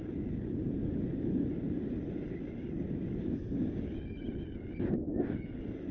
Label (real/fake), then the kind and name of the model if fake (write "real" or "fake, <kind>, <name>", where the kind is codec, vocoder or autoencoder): real